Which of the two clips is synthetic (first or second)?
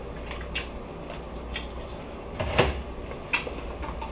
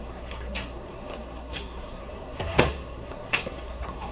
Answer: second